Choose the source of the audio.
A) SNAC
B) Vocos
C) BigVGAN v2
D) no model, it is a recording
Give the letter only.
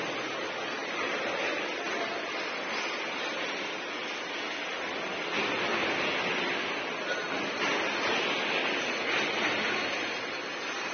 D